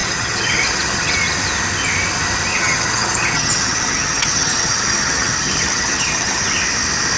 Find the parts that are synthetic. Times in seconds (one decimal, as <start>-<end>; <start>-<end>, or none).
0.0-1.1; 2.5-6.4